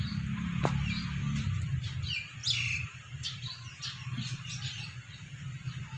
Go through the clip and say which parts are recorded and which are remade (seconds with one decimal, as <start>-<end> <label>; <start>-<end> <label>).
0.0-6.0 recorded